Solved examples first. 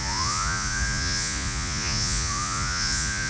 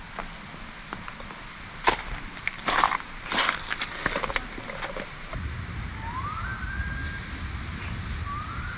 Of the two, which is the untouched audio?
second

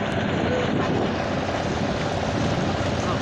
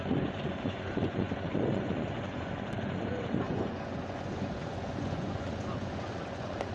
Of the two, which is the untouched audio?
first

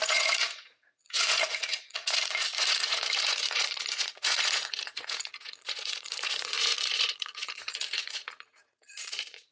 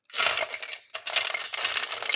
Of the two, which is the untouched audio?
second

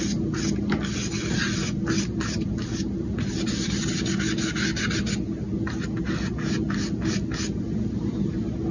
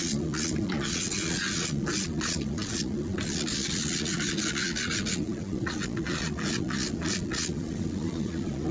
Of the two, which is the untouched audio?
first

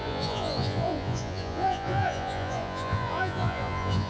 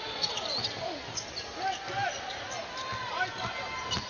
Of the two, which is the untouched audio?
second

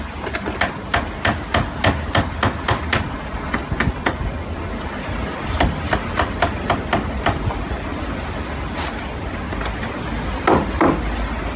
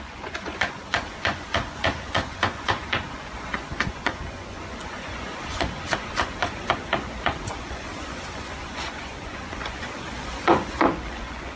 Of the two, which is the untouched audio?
first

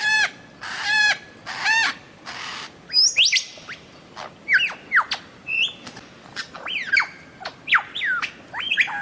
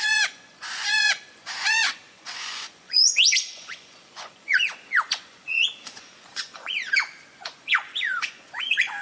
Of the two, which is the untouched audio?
first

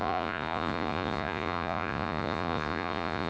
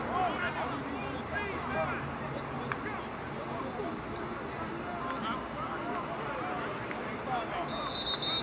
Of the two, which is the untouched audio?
second